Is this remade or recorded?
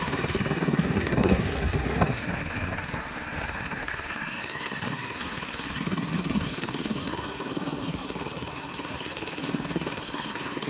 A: remade